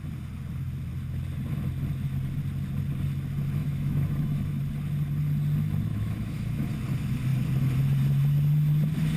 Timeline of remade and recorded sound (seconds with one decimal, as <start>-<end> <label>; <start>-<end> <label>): 0.0-3.6 recorded; 3.6-4.6 remade; 4.6-5.9 recorded; 5.9-6.7 remade; 6.7-9.2 recorded